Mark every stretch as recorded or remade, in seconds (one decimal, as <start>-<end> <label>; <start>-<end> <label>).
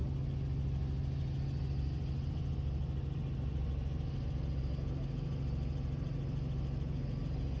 0.0-7.6 recorded